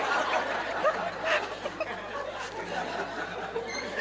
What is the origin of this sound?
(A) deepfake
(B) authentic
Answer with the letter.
B